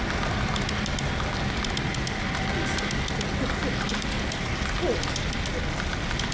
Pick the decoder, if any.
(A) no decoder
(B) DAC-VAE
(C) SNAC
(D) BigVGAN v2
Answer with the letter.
A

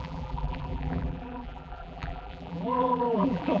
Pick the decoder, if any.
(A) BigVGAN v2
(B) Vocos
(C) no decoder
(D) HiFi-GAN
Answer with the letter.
A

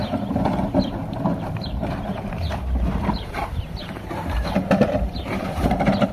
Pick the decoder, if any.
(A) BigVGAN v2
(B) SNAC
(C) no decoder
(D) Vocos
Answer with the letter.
A